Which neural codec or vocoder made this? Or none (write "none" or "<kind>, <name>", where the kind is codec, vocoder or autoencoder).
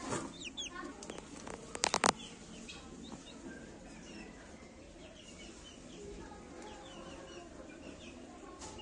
none